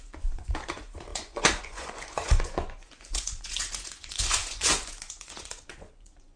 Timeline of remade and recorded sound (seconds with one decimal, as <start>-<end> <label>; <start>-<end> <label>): 0.0-6.4 remade